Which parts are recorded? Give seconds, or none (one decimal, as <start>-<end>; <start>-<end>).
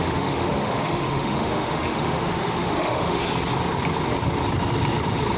3.2-5.4